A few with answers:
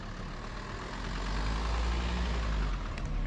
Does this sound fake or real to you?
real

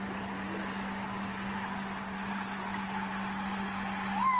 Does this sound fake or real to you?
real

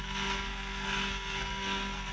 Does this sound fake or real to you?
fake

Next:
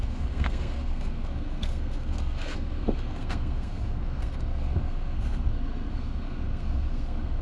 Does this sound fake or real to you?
fake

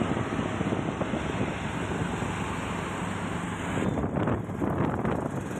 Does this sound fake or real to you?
real